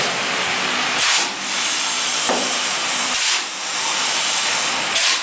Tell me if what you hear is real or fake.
fake